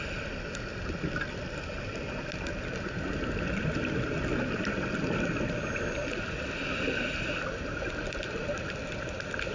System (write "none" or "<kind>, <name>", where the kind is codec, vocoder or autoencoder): none